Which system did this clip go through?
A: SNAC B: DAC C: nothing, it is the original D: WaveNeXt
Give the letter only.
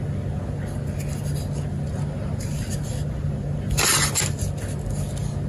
C